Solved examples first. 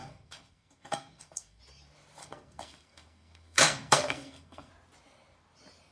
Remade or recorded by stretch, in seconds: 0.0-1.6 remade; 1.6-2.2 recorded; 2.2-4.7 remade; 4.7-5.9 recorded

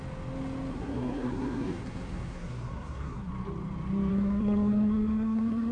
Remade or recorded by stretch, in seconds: 0.0-0.7 recorded; 0.7-3.3 remade; 3.3-4.1 recorded; 4.1-5.7 remade